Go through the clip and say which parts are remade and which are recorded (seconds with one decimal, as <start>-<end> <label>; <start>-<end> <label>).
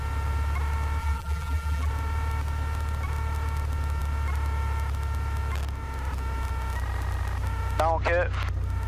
0.0-1.0 recorded; 1.0-1.9 remade; 1.9-8.9 recorded